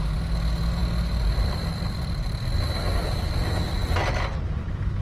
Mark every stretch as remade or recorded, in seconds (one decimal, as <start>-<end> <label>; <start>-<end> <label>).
0.0-1.4 recorded; 1.4-3.9 remade; 3.9-5.0 recorded